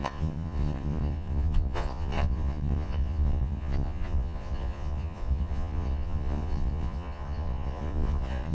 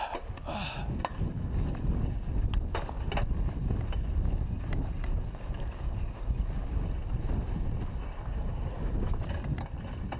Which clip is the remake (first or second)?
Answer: first